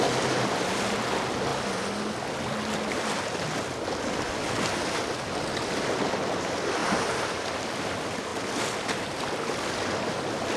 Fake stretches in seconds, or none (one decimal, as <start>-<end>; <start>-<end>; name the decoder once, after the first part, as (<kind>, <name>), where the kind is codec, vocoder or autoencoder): 6.8-7.4 (vocoder, BigVGAN v2)